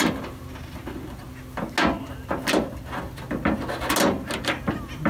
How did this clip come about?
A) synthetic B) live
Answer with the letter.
B